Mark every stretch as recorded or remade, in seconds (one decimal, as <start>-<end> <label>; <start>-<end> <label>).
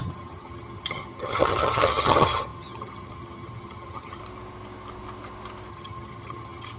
0.0-4.2 remade; 4.2-5.7 recorded; 5.7-6.8 remade